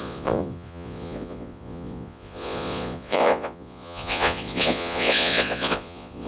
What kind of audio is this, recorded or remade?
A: remade